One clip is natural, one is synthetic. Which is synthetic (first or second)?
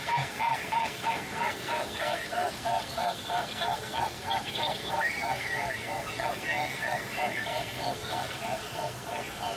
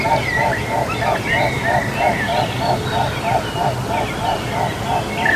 first